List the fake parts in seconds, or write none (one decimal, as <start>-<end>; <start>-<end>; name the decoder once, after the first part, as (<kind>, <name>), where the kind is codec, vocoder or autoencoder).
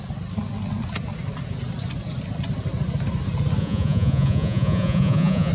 3.6-5.5 (vocoder, Vocos)